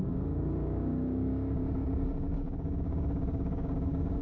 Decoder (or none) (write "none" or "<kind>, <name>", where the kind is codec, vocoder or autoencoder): codec, DAC